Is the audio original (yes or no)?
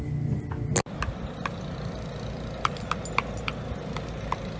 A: yes